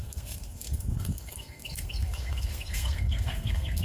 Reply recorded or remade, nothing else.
remade